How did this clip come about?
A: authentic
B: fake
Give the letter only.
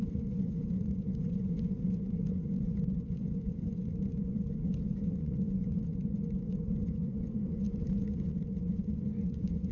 B